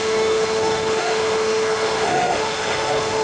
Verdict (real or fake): fake